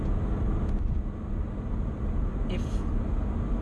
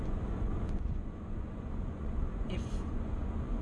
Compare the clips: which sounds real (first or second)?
first